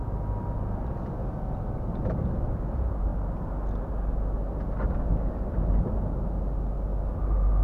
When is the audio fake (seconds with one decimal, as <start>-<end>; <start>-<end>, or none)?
none